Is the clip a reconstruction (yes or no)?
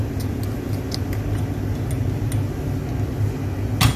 no